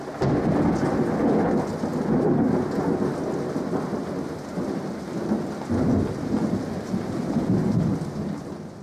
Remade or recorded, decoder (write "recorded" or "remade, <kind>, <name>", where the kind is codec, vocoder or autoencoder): recorded